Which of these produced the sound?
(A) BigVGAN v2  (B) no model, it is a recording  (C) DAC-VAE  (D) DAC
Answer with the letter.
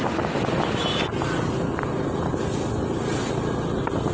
B